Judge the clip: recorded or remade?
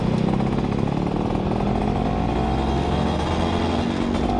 recorded